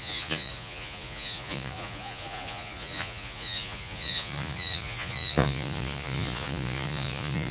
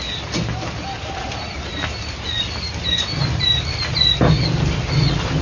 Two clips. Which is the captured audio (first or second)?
second